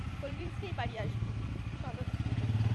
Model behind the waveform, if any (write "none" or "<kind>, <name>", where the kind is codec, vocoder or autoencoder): vocoder, BigVGAN v2